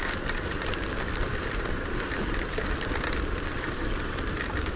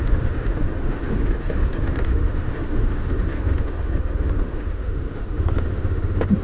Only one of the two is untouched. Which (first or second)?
first